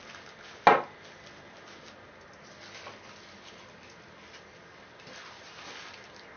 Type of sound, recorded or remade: recorded